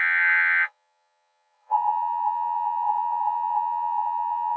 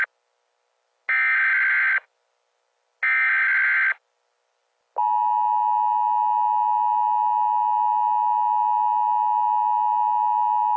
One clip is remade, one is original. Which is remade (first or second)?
first